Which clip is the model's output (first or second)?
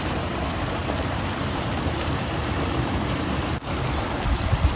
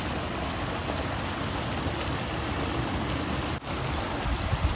first